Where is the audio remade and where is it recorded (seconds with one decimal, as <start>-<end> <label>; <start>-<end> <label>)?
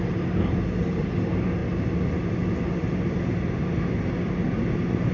0.0-5.1 recorded